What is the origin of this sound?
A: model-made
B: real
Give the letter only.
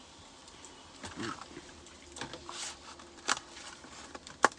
A